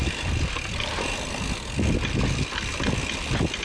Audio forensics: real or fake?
real